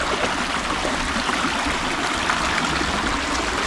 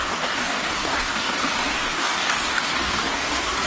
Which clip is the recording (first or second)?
first